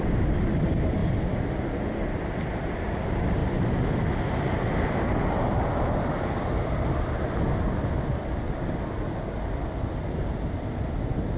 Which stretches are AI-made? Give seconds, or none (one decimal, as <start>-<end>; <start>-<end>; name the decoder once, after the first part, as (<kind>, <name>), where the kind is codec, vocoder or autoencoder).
none